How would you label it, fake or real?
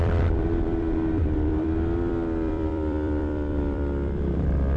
fake